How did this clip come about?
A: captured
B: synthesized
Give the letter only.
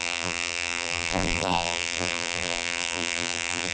B